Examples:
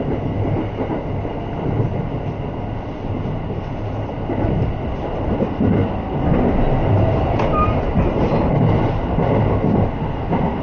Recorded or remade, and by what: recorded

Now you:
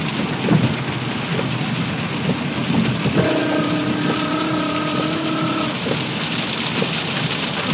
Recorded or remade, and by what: recorded